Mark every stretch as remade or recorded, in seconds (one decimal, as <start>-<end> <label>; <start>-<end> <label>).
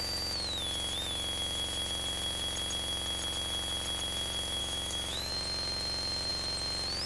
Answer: 0.0-4.6 recorded; 4.6-5.3 remade; 5.3-7.1 recorded